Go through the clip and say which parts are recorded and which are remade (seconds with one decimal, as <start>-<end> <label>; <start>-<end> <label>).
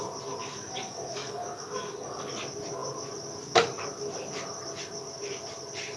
0.0-0.4 recorded; 0.4-2.3 remade; 2.3-6.0 recorded